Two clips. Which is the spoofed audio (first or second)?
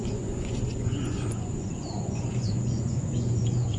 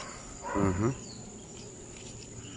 first